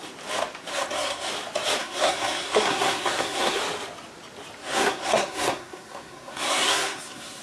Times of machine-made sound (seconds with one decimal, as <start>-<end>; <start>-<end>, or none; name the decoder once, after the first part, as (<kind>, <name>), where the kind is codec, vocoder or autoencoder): 0.7-1.3 (codec, SNAC); 1.8-3.6; 4.6-7.4